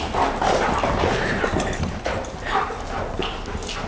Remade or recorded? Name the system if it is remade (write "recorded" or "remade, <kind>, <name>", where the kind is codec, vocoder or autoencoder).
recorded